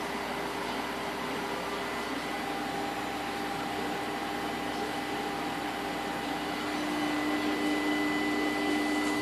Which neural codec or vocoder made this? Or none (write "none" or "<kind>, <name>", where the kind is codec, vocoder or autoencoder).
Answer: none